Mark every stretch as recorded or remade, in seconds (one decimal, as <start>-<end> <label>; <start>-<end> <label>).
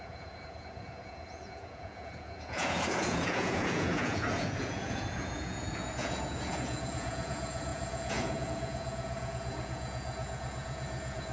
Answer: 0.0-11.3 remade